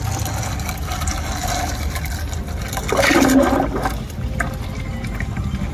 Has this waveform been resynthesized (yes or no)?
no